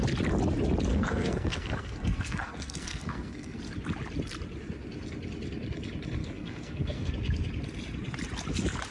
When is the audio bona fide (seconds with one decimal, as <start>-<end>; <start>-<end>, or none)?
0.0-0.9; 3.6-6.2; 7.1-8.9